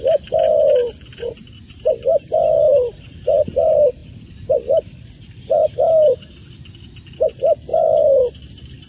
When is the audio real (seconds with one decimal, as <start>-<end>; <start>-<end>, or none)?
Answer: 0.0-7.7; 8.3-8.9